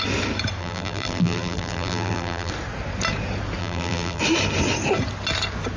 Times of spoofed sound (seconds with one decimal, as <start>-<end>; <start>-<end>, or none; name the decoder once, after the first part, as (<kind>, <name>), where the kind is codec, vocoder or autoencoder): 0.6-2.5 (vocoder, BigVGAN v2); 3.6-4.2